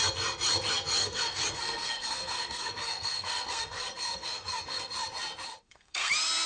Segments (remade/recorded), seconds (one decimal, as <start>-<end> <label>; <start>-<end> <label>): 0.0-1.0 recorded; 1.0-4.9 remade; 4.9-5.6 recorded; 5.6-6.1 remade; 6.1-6.5 recorded